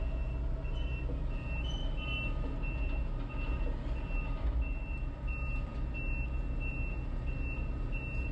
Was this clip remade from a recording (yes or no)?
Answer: no